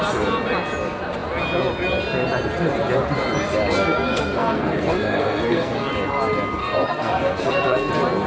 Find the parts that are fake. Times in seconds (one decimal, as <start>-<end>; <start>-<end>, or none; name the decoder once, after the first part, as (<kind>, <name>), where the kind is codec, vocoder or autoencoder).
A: 3.8-5.9 (codec, SNAC); 6.6-7.9

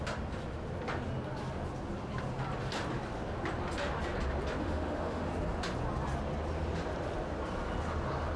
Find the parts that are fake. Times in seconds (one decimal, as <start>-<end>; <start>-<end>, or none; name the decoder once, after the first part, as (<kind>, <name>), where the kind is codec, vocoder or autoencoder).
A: 4.6-5.3 (autoencoder, DAC-VAE)

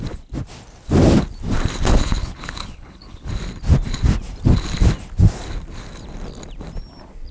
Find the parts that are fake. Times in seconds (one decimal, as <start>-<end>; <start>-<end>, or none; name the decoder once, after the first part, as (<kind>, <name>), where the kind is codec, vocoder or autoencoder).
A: 1.9-3.3 (codec, HILCodec)

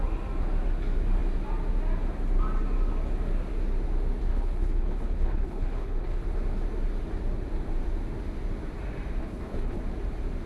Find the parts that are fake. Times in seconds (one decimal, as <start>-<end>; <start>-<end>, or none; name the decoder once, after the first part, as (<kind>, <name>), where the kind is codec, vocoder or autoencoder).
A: 4.3-6.2 (codec, HILCodec); 9.2-9.8

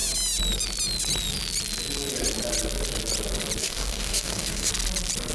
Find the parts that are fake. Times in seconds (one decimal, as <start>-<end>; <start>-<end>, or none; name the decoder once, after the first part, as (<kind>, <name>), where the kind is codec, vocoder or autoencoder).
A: 3.6-4.7 (codec, DAC)

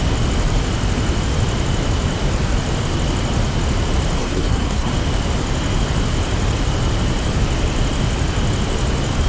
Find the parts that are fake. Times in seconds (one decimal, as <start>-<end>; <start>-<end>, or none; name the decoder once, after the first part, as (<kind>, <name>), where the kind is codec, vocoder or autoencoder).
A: 4.2-4.9 (codec, SNAC)

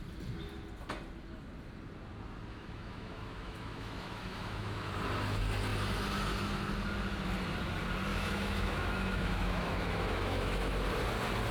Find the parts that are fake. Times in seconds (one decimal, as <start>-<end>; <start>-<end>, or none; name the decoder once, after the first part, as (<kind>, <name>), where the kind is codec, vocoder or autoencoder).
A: 2.5-4.9 (autoencoder, DAC-VAE); 8.1-10.7